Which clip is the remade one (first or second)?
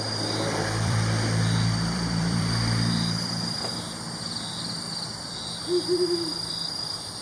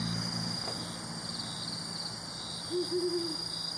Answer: first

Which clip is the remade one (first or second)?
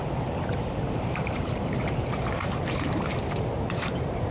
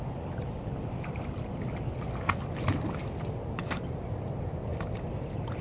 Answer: first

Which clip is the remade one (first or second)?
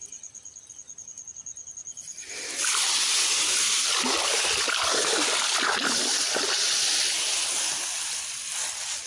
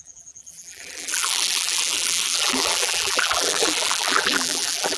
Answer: second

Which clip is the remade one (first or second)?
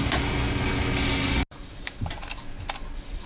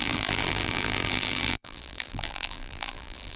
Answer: second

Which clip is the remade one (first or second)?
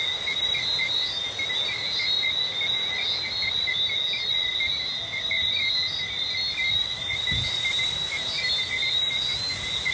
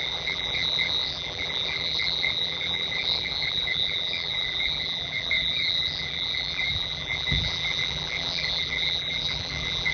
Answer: second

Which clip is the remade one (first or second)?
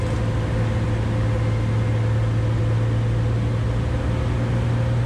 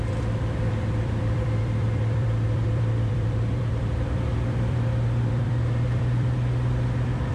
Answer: second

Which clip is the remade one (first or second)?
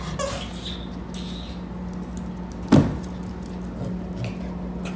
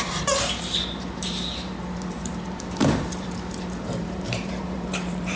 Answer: second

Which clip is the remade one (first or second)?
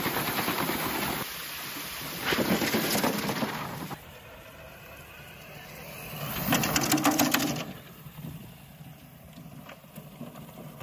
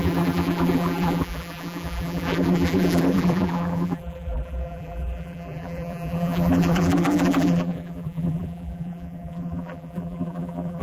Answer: second